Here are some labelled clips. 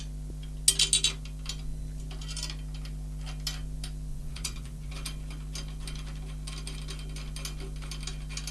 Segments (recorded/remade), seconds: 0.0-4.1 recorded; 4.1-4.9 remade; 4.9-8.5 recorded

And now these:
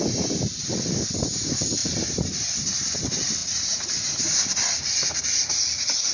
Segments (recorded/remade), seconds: 0.0-6.1 recorded

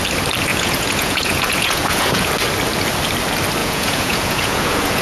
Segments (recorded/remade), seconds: 0.0-0.5 recorded; 0.5-2.3 remade; 2.3-3.6 recorded; 3.6-5.0 remade

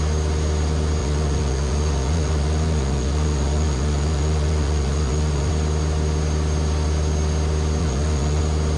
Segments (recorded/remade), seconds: 0.0-1.0 recorded; 1.0-5.5 remade; 5.5-7.8 recorded; 7.8-8.4 remade; 8.4-8.8 recorded

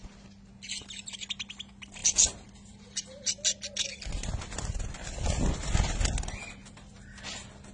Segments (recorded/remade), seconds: 0.0-7.7 recorded

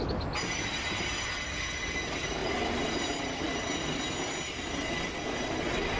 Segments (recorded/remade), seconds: 0.0-6.0 recorded

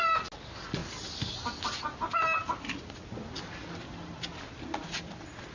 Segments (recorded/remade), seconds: 0.0-5.5 recorded